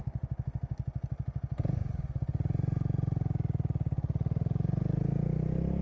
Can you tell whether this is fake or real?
real